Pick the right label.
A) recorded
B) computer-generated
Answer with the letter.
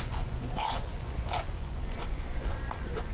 B